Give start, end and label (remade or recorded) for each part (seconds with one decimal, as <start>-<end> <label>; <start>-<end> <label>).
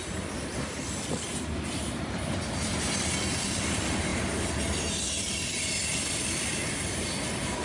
0.0-5.9 recorded; 5.9-6.6 remade; 6.6-7.6 recorded